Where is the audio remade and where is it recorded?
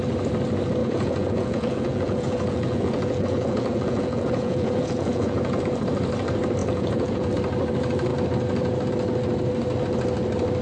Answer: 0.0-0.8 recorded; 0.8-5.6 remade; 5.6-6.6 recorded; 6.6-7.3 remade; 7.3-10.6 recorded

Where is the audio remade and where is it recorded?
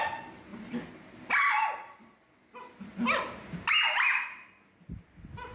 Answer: 0.0-5.5 recorded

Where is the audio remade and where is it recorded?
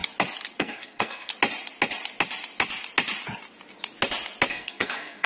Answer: 0.0-0.6 recorded; 0.6-1.3 remade; 1.3-4.5 recorded; 4.5-5.3 remade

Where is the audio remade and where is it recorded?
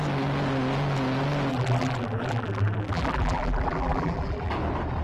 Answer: 0.0-1.5 recorded; 1.5-4.5 remade; 4.5-5.0 recorded